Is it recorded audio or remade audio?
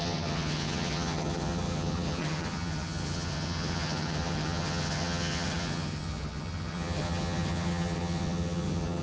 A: remade